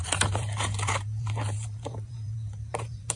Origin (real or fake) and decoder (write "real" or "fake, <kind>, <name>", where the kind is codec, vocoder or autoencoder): fake, vocoder, BigVGAN v2